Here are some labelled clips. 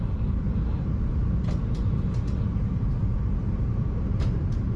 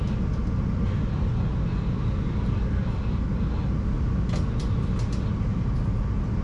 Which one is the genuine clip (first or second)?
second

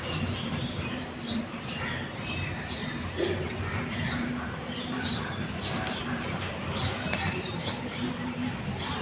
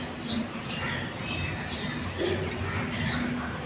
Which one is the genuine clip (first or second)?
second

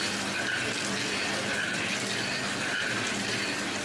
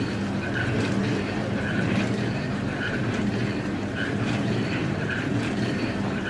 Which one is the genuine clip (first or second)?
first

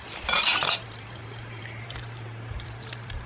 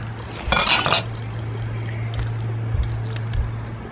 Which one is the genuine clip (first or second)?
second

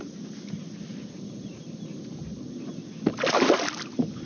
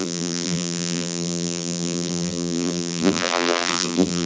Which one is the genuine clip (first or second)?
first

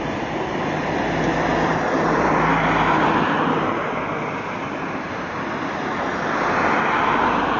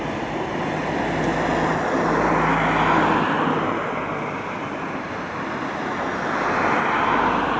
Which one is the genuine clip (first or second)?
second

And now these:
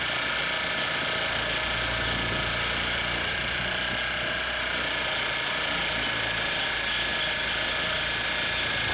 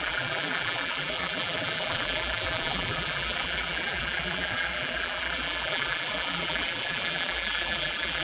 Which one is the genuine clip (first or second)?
first